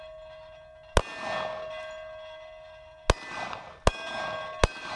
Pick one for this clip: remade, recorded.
recorded